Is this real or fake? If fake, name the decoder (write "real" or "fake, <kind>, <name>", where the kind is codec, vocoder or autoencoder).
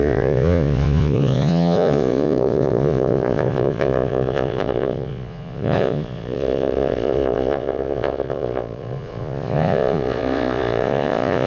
fake, vocoder, Vocos